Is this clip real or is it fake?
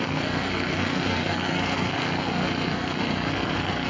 fake